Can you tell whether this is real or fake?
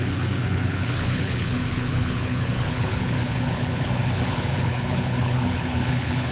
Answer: fake